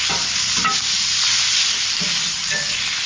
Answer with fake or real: real